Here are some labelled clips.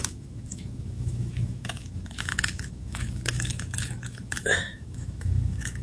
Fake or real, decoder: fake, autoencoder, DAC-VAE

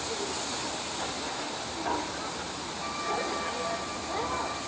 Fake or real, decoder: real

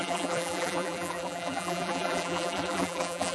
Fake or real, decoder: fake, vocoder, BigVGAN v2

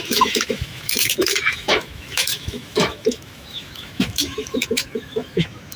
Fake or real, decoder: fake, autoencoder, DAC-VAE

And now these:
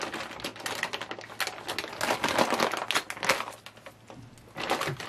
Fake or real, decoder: real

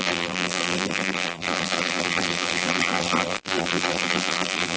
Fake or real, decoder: fake, vocoder, BigVGAN v2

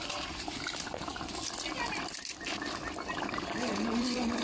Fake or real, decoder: real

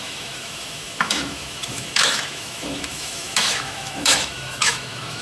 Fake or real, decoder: fake, autoencoder, DAC-VAE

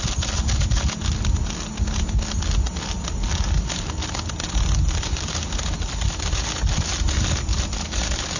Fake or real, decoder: real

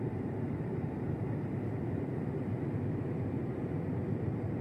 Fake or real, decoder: fake, vocoder, BigVGAN v2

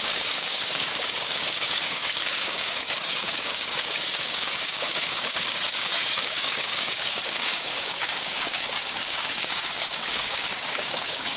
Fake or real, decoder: fake, codec, DAC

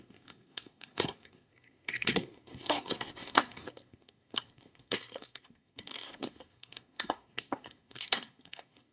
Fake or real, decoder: fake, codec, SNAC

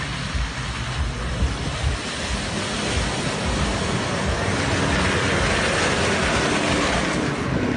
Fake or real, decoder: real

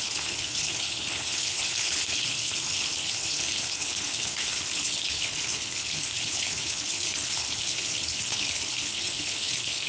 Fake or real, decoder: fake, codec, HILCodec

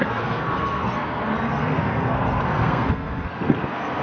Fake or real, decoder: fake, codec, SNAC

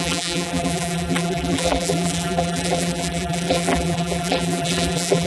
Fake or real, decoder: fake, vocoder, BigVGAN v2